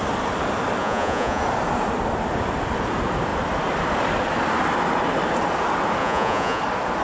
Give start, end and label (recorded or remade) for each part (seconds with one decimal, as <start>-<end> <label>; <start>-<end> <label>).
0.0-0.8 recorded; 0.8-1.4 remade; 1.4-6.0 recorded; 6.0-6.6 remade; 6.6-7.0 recorded